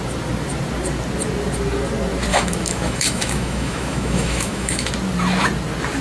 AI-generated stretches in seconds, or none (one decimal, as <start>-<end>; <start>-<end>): 2.3-4.9